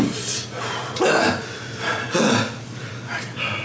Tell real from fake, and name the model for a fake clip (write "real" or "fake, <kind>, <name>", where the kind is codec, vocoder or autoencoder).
real